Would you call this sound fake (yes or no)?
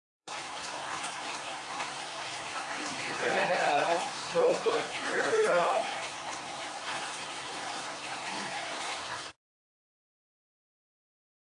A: yes